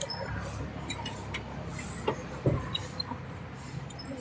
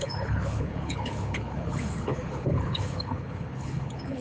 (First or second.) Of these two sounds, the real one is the first